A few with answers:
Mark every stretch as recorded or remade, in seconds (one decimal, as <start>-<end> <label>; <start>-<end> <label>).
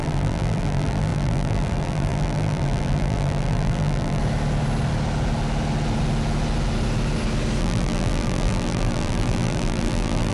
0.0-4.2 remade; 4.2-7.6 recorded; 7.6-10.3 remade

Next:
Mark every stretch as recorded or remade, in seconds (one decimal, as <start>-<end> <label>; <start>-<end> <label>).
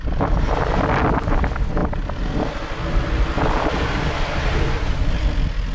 0.0-5.7 recorded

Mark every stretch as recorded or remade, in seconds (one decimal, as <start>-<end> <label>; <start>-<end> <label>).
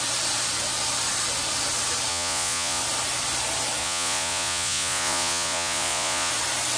0.0-2.1 recorded; 2.1-2.8 remade; 2.8-3.8 recorded; 3.8-6.3 remade; 6.3-6.8 recorded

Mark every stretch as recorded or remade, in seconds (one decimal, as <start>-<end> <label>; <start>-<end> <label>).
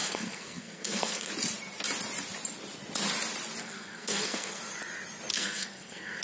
0.0-1.3 remade; 1.3-3.6 recorded; 3.6-4.6 remade; 4.6-5.3 recorded; 5.3-6.2 remade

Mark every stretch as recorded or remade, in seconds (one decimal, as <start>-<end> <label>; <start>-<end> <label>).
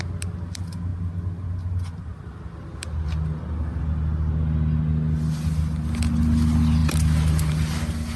0.0-8.2 recorded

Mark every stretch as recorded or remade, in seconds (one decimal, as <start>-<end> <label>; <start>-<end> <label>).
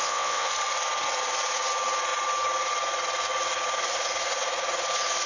0.0-0.5 remade; 0.5-5.3 recorded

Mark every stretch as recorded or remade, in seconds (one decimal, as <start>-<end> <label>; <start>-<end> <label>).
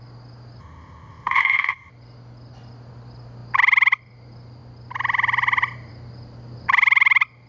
0.0-0.6 recorded; 0.6-1.9 remade; 1.9-7.5 recorded